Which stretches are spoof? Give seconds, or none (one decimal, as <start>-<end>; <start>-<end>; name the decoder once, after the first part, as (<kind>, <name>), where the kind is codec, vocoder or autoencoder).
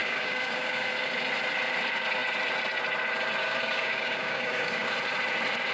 0.0-0.9 (codec, DAC); 3.4-4.9